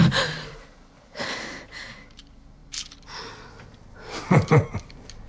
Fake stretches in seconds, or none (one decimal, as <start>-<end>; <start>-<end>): none